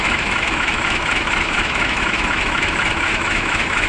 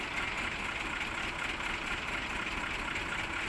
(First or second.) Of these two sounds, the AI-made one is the first